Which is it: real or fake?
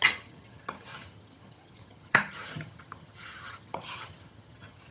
fake